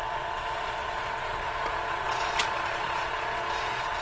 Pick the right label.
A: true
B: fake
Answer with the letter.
B